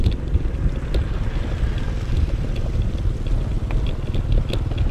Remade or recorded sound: recorded